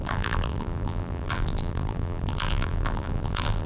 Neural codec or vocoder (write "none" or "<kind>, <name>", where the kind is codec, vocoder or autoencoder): vocoder, BigVGAN v2